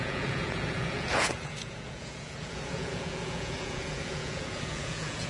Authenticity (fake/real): fake